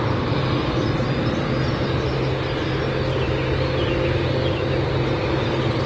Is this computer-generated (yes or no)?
no